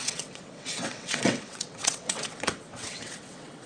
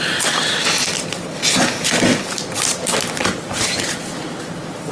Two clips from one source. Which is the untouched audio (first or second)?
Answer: second